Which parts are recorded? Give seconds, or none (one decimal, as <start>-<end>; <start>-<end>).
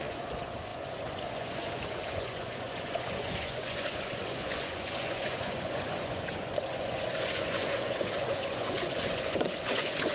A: none